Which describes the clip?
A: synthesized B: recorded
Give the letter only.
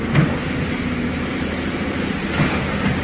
B